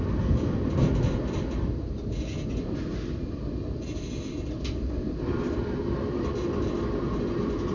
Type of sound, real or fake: real